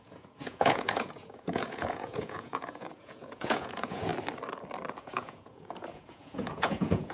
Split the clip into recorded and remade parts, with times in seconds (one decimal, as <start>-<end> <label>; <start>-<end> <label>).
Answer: 0.0-4.1 remade; 4.1-5.0 recorded; 5.0-7.1 remade